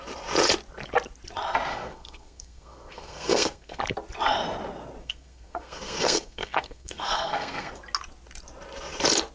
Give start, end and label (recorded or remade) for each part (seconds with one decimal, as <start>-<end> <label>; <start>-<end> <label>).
0.0-1.7 recorded; 1.7-3.8 remade; 3.8-5.0 recorded; 5.0-7.7 remade; 7.7-9.3 recorded